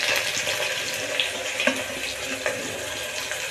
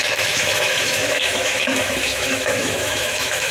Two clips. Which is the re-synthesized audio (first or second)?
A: second